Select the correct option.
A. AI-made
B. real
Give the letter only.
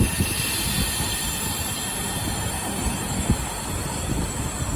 B